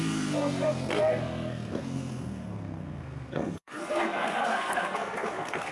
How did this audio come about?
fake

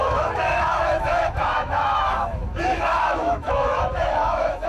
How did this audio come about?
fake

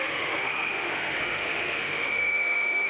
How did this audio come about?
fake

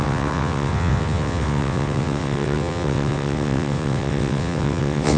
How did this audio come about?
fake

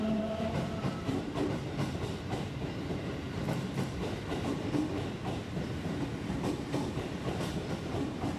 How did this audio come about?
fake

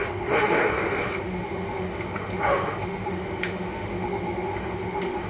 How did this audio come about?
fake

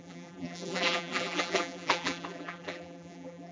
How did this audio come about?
fake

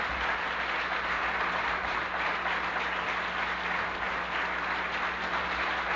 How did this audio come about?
real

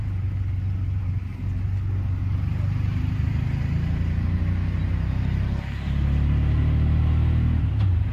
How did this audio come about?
real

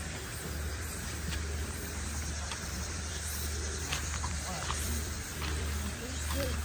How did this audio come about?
fake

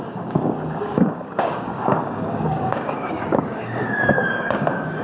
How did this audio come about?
fake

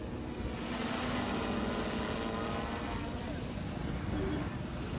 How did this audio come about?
real